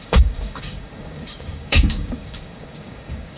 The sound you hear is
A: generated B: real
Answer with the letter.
A